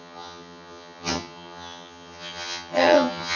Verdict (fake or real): fake